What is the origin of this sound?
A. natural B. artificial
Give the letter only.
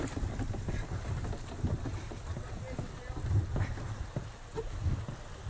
A